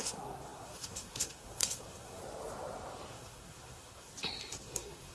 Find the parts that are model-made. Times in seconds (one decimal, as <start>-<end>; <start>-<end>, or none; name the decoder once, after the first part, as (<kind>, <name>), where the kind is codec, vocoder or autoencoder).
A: 0.0-2.2 (codec, SNAC); 3.1-4.1; 4.6-5.1